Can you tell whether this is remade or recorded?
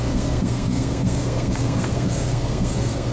remade